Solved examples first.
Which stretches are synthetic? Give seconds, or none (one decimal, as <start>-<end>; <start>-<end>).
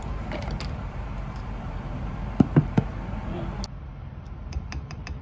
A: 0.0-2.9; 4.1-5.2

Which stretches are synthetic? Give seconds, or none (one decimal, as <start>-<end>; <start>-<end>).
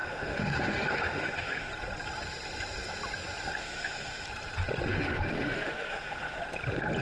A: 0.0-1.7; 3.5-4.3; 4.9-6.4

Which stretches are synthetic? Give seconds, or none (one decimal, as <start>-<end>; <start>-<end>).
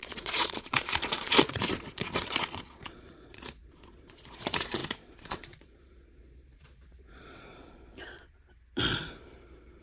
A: 0.0-8.2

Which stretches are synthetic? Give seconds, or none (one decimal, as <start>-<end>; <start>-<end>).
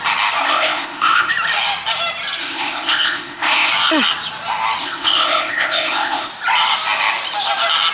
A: 0.4-1.3; 2.4-3.7; 4.8-6.3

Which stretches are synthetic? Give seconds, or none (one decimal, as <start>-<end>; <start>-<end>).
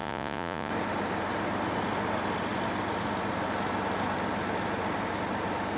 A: 0.0-0.7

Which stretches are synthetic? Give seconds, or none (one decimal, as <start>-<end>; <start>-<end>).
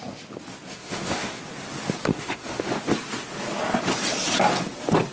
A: 0.7-1.4; 2.1-2.7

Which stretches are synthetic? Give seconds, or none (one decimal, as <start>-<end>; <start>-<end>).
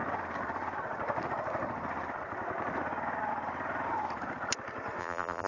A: 5.0-5.5